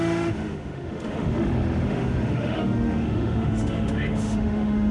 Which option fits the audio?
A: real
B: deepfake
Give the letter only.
B